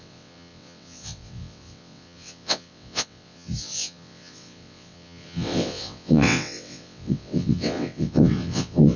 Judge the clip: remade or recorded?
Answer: remade